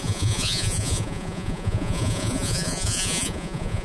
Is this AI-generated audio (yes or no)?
yes